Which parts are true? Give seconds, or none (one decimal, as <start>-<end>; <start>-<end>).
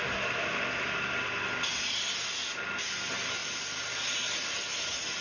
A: 0.0-5.2